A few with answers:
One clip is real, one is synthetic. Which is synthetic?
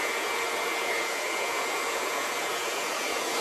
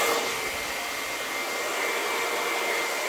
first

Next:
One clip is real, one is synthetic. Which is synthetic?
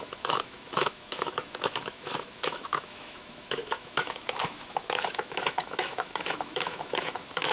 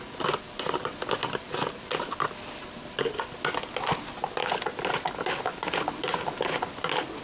first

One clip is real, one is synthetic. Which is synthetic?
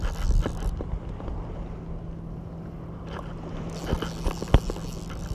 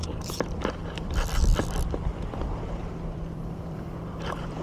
second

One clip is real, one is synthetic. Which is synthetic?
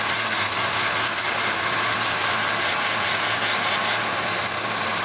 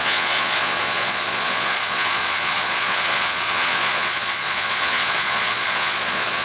second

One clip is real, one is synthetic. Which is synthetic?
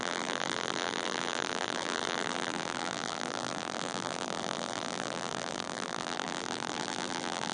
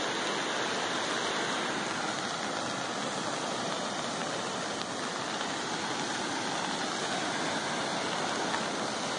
first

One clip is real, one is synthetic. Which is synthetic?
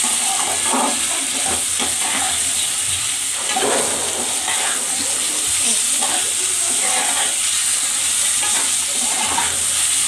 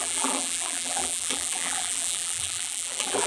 second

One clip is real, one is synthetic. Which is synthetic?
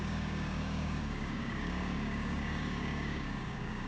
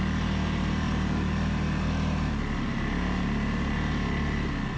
first